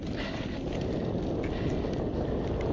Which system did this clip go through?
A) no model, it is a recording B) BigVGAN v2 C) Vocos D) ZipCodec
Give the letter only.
A